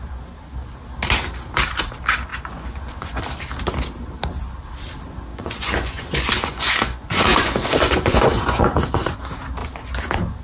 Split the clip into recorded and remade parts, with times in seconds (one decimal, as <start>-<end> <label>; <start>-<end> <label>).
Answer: 0.0-2.3 recorded; 2.3-3.2 remade; 3.2-5.3 recorded; 5.3-9.2 remade; 9.2-10.4 recorded